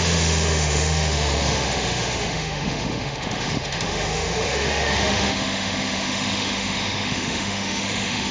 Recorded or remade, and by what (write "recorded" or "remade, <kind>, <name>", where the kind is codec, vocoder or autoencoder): remade, autoencoder, DAC-VAE